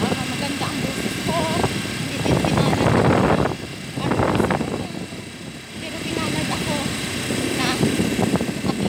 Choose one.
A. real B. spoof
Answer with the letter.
A